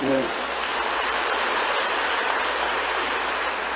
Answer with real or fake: fake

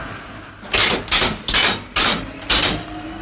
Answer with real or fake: real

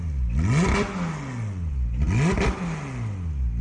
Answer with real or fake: real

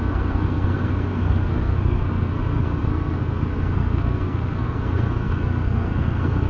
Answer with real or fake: fake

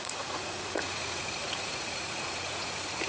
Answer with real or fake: fake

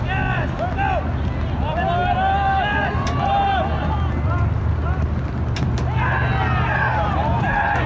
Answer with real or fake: real